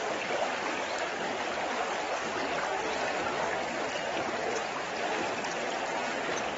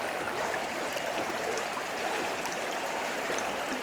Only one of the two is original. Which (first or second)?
first